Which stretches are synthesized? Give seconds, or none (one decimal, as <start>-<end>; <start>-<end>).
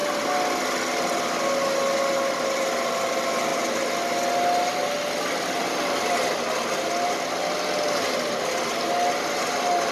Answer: none